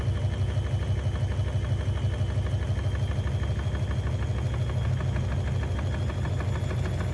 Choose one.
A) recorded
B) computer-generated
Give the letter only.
A